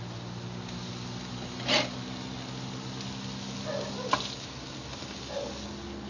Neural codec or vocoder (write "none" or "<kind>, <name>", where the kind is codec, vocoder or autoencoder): none